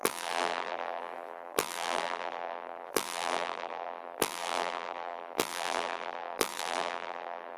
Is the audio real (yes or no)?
no